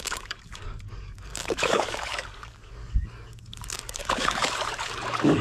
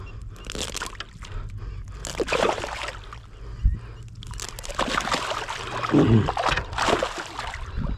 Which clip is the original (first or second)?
second